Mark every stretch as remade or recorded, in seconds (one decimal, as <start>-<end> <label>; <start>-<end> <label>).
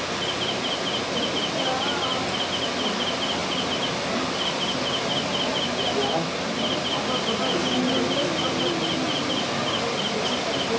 0.0-10.8 recorded